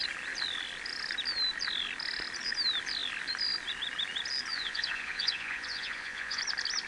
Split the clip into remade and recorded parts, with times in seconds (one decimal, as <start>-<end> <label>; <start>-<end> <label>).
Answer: 0.0-4.5 recorded; 4.5-6.4 remade; 6.4-6.9 recorded